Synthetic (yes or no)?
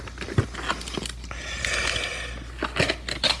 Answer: no